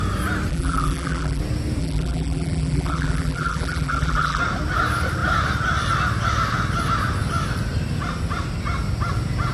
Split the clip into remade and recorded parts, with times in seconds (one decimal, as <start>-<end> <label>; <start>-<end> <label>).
0.0-0.5 recorded; 0.5-1.4 remade; 1.4-1.8 recorded; 1.8-4.4 remade; 4.4-9.5 recorded